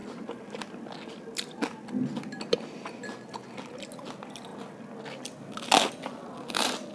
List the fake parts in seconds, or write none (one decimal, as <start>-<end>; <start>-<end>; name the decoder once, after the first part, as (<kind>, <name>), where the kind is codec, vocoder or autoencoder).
none